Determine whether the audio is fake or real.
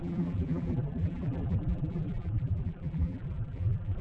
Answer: fake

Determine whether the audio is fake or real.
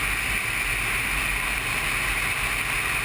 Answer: real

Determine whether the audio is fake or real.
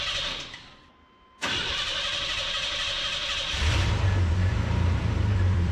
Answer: fake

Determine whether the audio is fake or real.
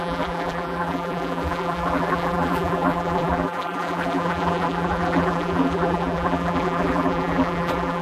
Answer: fake